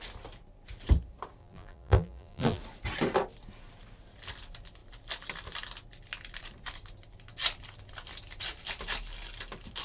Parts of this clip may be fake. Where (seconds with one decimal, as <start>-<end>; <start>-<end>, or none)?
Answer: 1.4-2.6